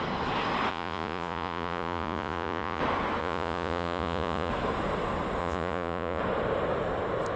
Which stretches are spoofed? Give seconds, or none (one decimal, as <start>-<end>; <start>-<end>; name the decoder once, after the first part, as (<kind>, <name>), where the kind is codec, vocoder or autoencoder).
0.7-2.8 (vocoder, Vocos); 3.2-4.5; 5.4-6.2